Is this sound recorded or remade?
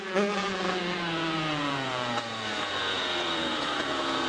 remade